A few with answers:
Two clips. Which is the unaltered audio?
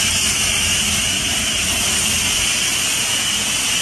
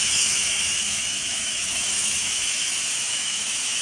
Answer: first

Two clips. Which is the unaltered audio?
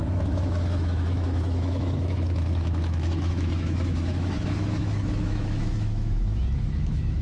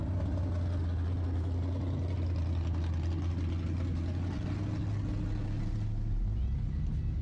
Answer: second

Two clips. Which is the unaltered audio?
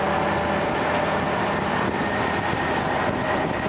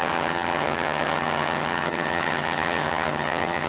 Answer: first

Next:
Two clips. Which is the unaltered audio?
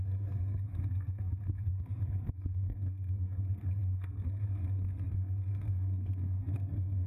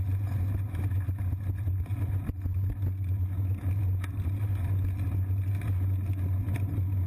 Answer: second